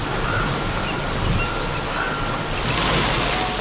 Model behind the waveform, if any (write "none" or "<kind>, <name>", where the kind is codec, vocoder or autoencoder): none